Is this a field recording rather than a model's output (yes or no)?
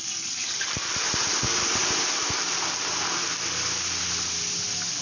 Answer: yes